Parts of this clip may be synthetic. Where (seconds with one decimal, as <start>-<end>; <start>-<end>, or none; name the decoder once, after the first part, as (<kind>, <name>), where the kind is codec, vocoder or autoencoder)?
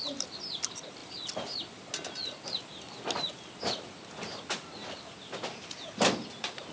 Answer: none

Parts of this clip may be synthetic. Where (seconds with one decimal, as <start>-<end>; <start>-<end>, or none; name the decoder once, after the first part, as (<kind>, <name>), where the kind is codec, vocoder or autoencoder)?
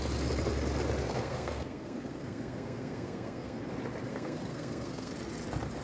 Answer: 1.0-3.6 (codec, SNAC); 4.1-5.1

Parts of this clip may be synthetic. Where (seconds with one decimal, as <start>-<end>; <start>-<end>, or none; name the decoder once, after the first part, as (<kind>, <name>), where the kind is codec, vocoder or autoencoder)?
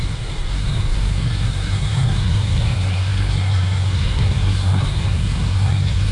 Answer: 0.0-6.1 (codec, SNAC)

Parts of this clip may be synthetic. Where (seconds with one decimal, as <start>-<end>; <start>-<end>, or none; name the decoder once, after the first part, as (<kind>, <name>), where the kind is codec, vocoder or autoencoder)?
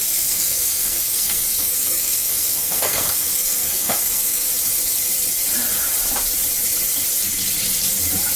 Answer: 0.0-4.5 (codec, SNAC)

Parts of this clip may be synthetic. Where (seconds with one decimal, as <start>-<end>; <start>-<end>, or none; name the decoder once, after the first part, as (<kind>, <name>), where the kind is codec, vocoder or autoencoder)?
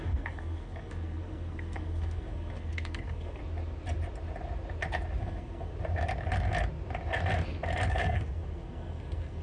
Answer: 0.0-3.4 (codec, SNAC); 5.2-5.7; 7.9-9.4